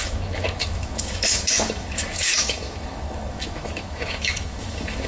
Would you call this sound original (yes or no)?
no